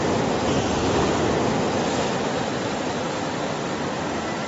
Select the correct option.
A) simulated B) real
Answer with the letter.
B